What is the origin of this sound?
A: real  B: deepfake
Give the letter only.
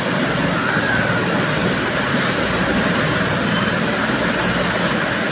A